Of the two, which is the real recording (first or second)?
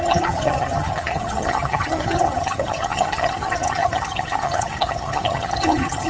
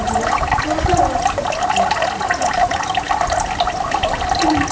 second